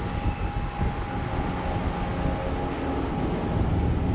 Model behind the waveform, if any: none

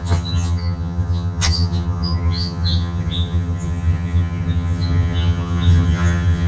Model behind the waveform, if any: vocoder, HiFi-GAN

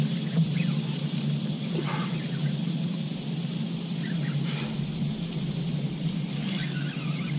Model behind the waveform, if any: none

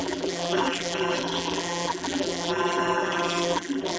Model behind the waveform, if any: vocoder, BigVGAN v2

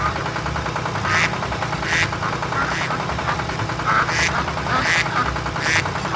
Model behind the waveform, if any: vocoder, BigVGAN v2